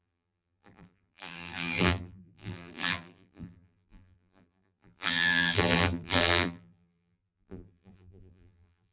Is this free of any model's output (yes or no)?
no